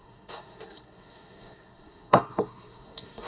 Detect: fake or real fake